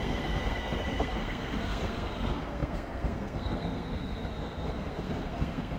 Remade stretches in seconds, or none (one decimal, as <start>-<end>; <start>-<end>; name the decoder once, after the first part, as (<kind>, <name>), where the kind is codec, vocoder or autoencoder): 0.0-5.8 (codec, SNAC)